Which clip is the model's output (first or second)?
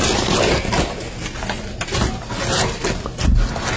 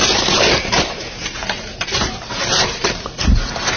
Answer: second